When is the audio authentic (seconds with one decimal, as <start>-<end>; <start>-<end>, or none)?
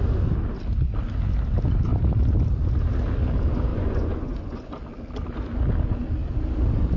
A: 0.0-3.7; 4.7-7.0